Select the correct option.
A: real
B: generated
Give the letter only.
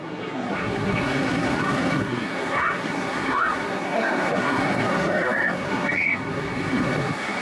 B